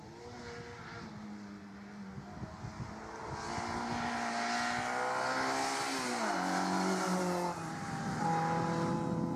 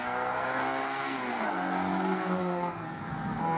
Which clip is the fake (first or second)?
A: second